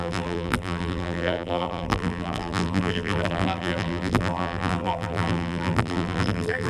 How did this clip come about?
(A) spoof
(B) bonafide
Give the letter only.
A